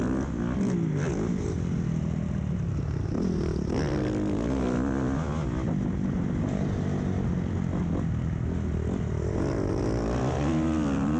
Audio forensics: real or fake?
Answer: real